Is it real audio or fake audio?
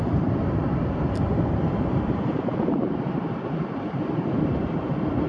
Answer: fake